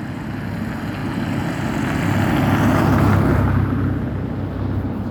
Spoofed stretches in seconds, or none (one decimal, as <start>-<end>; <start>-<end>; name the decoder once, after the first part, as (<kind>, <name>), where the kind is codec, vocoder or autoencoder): none